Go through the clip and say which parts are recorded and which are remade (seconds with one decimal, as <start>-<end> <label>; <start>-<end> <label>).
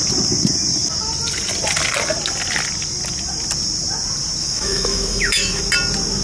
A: 0.0-4.4 recorded; 4.4-5.6 remade; 5.6-6.2 recorded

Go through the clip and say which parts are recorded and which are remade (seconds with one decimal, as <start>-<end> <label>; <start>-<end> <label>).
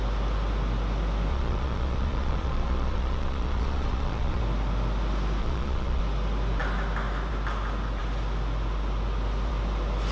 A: 0.0-1.3 recorded; 1.3-4.4 remade; 4.4-5.4 recorded; 5.4-6.0 remade; 6.0-10.1 recorded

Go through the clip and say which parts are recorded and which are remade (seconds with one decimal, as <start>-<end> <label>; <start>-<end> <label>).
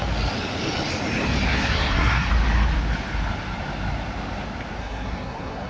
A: 0.0-1.5 recorded; 1.5-2.3 remade; 2.3-4.8 recorded; 4.8-5.7 remade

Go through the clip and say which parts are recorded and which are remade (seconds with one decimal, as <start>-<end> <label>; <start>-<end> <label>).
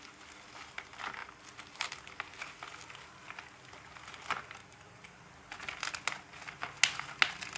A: 0.0-1.2 recorded; 1.2-2.0 remade; 2.0-4.6 recorded; 4.6-5.2 remade; 5.2-7.6 recorded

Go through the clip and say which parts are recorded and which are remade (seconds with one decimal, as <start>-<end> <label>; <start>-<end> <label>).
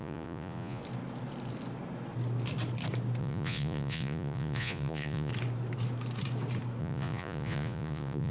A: 0.0-0.8 remade; 0.8-3.2 recorded; 3.2-5.3 remade; 5.3-6.8 recorded; 6.8-8.3 remade